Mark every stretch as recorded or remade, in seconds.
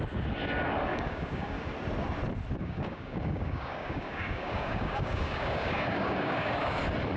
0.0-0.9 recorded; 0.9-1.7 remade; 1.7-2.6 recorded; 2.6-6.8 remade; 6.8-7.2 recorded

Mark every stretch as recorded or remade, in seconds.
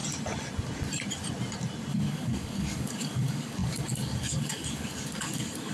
0.0-1.9 recorded; 1.9-5.7 remade